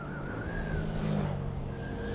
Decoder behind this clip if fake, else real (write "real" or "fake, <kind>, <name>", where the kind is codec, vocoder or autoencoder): real